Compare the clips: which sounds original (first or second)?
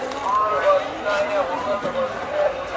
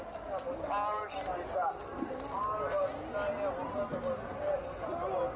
second